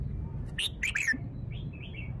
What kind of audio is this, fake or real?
real